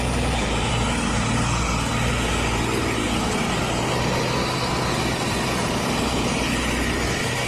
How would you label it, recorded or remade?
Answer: recorded